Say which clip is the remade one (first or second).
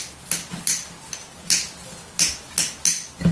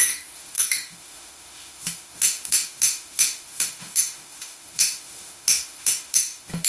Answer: second